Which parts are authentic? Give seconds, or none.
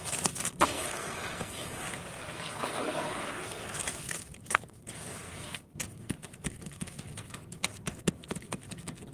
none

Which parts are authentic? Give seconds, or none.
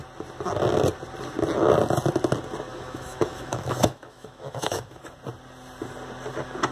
0.0-2.7; 5.0-6.7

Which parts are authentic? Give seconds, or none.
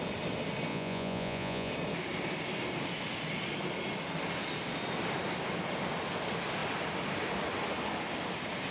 0.0-0.7; 1.7-8.7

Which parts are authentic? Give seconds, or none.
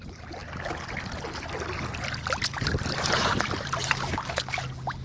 0.0-3.8; 4.4-5.0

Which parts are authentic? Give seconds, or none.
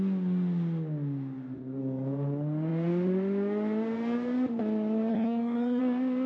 0.0-5.1; 5.8-6.3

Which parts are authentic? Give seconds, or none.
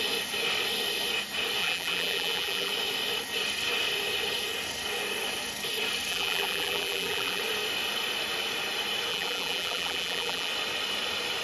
0.0-1.6; 2.7-6.1; 7.4-9.1; 10.5-11.4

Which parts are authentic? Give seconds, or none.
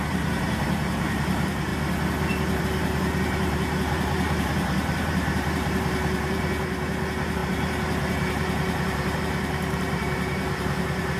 1.7-2.6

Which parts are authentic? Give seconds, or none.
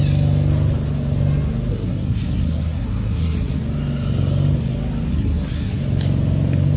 0.0-1.7; 3.6-5.1; 5.8-6.8